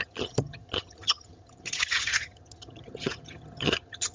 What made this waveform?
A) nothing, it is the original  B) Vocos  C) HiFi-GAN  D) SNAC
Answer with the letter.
C